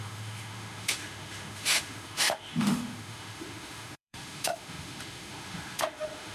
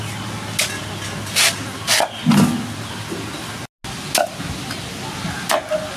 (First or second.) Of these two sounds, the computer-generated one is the first